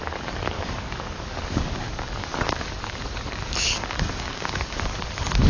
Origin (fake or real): fake